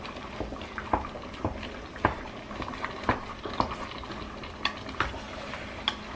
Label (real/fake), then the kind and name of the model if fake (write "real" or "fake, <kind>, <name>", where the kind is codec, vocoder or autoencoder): real